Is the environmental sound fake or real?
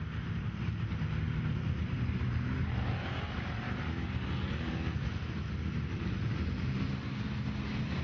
real